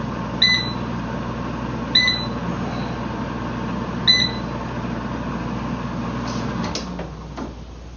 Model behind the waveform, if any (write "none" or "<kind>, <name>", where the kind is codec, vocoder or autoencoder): none